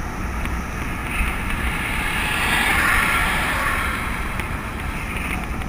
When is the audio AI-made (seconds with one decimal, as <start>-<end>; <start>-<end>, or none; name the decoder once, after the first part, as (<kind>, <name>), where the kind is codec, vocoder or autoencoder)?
1.0-1.9 (vocoder, BigVGAN v2); 3.2-5.2